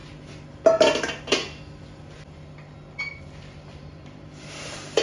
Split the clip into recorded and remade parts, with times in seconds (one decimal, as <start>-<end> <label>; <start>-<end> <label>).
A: 0.0-3.0 recorded; 3.0-5.0 remade